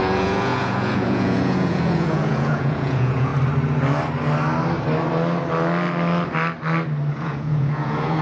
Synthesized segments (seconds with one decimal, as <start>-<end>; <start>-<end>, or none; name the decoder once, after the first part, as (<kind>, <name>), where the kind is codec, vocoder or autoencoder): 0.0-3.3 (vocoder, Vocos); 7.1-8.2